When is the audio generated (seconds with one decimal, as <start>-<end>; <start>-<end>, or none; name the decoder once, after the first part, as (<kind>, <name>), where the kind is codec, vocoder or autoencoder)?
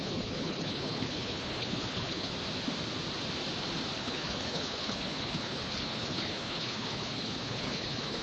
0.0-2.3 (codec, HILCodec); 4.0-8.2